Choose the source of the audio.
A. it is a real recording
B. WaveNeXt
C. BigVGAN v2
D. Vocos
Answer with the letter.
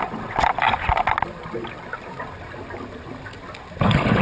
A